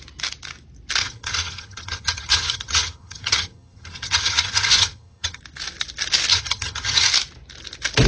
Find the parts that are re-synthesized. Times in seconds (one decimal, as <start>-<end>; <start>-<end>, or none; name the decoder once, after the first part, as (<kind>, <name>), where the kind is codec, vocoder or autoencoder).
1.0-5.4 (vocoder, HiFi-GAN); 6.3-7.1